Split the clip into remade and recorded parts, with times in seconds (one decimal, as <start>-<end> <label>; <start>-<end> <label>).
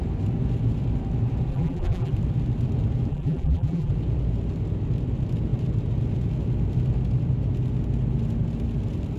0.0-1.5 recorded; 1.5-2.1 remade; 2.1-3.1 recorded; 3.1-3.9 remade; 3.9-9.2 recorded